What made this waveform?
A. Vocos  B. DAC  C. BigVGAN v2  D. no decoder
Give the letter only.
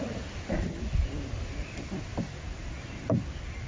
D